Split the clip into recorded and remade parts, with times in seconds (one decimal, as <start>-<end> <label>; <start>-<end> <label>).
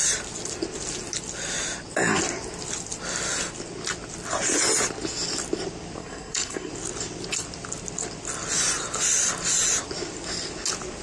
0.0-6.0 recorded; 6.0-6.7 remade; 6.7-11.0 recorded